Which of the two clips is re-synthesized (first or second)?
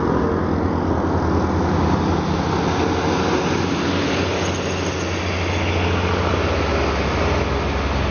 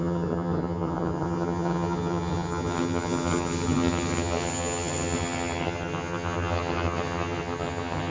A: second